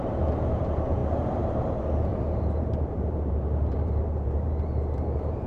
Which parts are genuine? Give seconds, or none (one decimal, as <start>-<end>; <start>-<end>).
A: 0.0-2.1